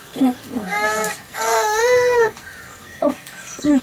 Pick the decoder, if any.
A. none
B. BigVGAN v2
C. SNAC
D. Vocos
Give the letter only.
C